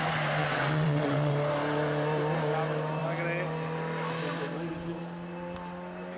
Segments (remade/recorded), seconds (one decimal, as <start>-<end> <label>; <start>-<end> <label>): 0.0-0.4 recorded; 0.4-1.3 remade; 1.3-6.2 recorded